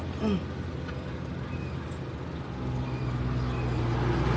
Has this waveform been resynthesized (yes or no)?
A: no